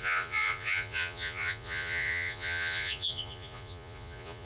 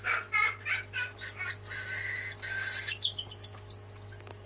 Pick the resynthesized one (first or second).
first